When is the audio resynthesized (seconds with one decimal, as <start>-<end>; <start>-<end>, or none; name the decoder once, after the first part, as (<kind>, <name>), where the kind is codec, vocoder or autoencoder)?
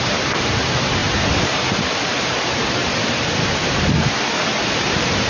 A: 0.0-5.3 (vocoder, BigVGAN v2)